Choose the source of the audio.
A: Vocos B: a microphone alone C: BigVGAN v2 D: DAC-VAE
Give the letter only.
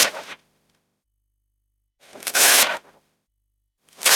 D